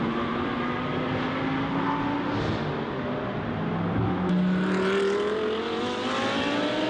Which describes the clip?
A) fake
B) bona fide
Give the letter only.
B